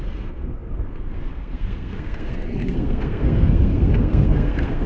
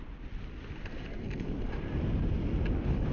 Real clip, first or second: second